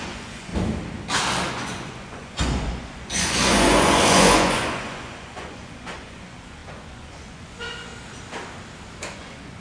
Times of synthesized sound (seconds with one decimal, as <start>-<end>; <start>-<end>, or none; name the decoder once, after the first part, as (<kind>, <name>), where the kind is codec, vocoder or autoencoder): 0.0-0.5 (vocoder, Vocos); 1.5-7.9; 9.0-9.6